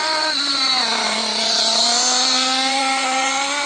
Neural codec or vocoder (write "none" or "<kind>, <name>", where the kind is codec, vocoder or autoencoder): vocoder, BigVGAN v2